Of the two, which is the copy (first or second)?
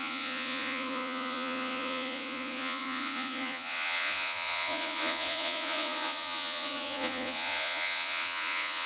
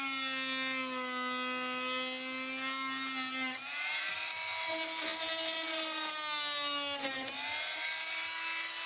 first